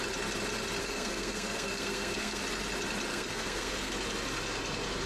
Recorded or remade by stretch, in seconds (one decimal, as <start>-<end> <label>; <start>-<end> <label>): 0.0-0.8 recorded; 0.8-2.4 remade; 2.4-3.1 recorded; 3.1-3.9 remade; 3.9-5.1 recorded